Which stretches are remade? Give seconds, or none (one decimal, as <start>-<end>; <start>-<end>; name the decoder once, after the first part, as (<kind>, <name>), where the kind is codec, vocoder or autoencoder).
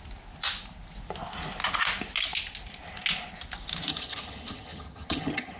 3.9-5.6 (vocoder, HiFi-GAN)